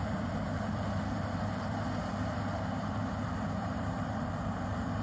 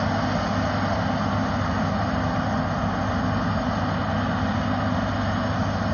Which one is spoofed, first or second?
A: first